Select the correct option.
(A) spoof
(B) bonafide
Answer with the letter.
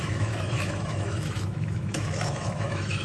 A